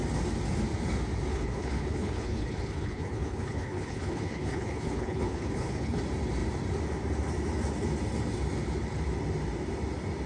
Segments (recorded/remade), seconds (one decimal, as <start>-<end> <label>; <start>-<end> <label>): 0.0-1.3 recorded; 1.3-6.0 remade; 6.0-10.3 recorded